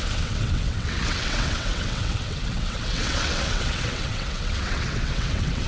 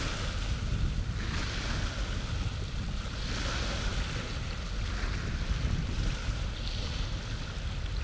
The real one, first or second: second